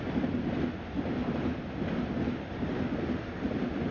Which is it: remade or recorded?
recorded